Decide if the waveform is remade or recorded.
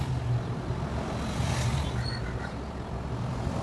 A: recorded